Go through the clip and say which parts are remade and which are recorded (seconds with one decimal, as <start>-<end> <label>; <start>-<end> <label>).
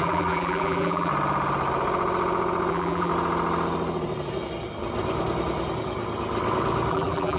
0.0-1.1 remade; 1.1-2.7 recorded; 2.7-3.1 remade; 3.1-6.9 recorded; 6.9-7.4 remade